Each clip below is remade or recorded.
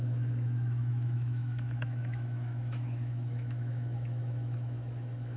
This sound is remade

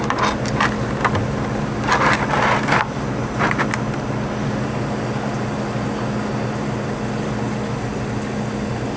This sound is recorded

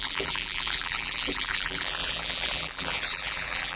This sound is remade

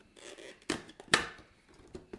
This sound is recorded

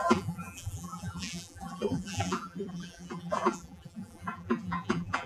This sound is remade